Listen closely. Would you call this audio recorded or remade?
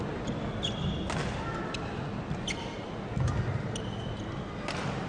recorded